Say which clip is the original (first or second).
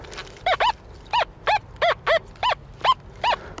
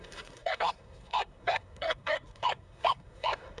first